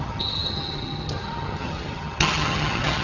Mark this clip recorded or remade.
remade